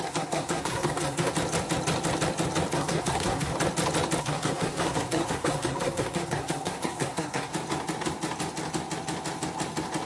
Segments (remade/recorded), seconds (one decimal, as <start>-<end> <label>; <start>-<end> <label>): 0.0-1.3 remade; 1.3-2.7 recorded; 2.7-3.5 remade; 3.5-4.2 recorded; 4.2-7.5 remade; 7.5-10.1 recorded

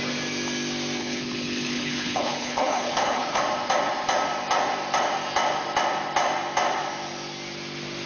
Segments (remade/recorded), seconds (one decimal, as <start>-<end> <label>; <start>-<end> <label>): 0.0-1.0 recorded; 1.0-3.4 remade; 3.4-8.1 recorded